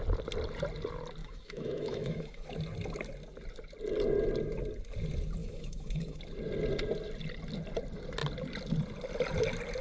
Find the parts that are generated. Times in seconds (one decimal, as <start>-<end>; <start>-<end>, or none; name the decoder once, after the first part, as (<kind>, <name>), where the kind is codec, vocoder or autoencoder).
1.2-2.5 (autoencoder, DAC-VAE); 5.4-6.2